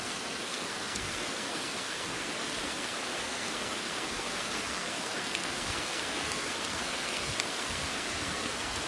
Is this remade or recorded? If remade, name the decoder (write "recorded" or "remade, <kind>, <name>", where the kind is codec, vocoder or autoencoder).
remade, codec, SNAC